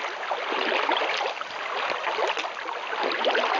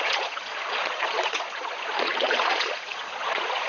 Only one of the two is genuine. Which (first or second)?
first